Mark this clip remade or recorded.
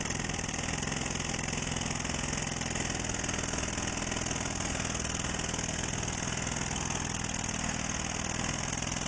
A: recorded